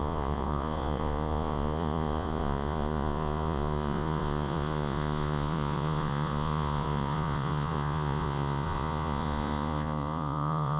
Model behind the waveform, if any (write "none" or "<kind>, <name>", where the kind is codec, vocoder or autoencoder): vocoder, Vocos